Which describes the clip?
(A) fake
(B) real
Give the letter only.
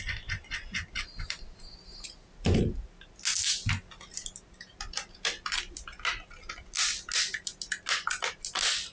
B